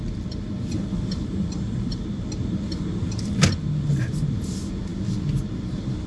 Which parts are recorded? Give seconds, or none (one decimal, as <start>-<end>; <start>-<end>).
0.0-6.1